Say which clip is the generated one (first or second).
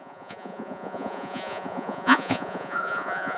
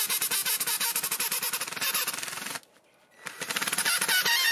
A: first